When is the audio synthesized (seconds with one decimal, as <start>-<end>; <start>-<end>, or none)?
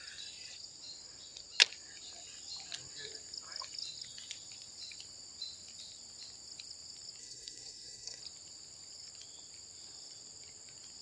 7.2-8.2